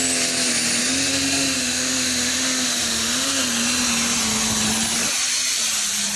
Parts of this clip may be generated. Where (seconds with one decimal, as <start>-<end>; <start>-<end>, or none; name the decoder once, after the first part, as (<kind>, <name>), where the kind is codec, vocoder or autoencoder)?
1.1-3.4 (autoencoder, DAC-VAE)